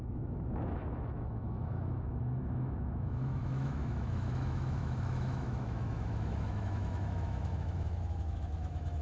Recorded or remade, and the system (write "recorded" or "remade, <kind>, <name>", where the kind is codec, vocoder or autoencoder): remade, autoencoder, DAC-VAE